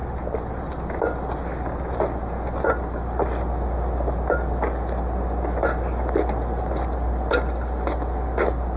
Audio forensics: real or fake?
real